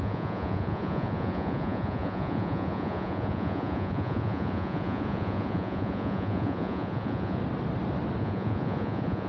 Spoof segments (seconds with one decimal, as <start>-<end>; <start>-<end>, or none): 0.0-7.4; 8.2-9.3